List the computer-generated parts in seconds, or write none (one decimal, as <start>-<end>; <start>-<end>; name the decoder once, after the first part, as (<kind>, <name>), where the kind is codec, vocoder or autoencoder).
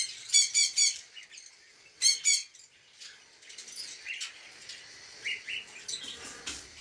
none